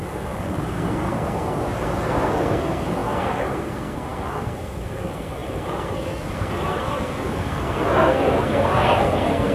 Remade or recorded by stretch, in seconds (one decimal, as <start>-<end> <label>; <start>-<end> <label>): 0.0-9.5 remade

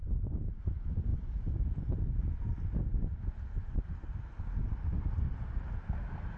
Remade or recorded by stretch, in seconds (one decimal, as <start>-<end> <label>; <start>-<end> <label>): 0.0-6.4 recorded

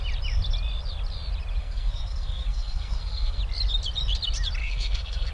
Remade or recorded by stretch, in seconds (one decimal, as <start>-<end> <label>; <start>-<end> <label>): 0.0-1.6 recorded; 1.6-3.4 remade; 3.4-4.6 recorded; 4.6-5.3 remade

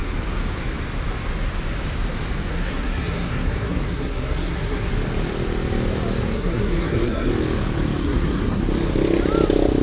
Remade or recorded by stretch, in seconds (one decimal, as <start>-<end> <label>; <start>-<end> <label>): 0.0-2.5 recorded; 2.5-4.9 remade; 4.9-6.3 recorded; 6.3-7.3 remade; 7.3-8.0 recorded; 8.0-8.6 remade; 8.6-9.8 recorded

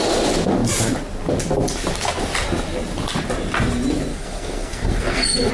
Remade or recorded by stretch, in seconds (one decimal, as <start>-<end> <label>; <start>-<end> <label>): 0.0-4.1 recorded; 4.1-5.5 remade

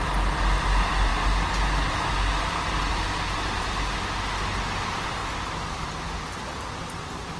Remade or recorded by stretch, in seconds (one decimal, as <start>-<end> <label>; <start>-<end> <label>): 0.0-7.4 recorded

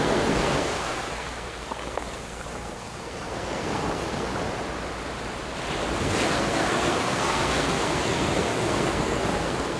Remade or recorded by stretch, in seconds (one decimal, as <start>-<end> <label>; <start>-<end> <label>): 0.0-4.3 remade; 4.3-6.0 recorded; 6.0-9.8 remade

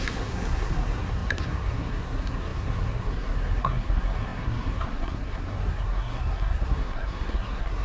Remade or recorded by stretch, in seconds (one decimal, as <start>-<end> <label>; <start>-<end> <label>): 0.0-7.8 remade